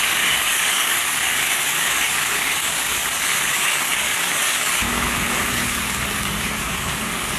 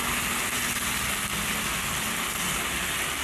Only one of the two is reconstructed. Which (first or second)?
first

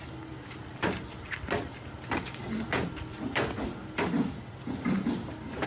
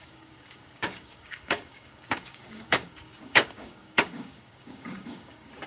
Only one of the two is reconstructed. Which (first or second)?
second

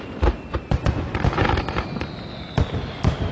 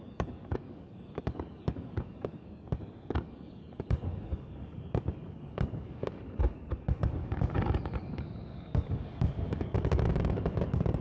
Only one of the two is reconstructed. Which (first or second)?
second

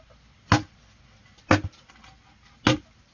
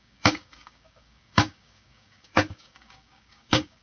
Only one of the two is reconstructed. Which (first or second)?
second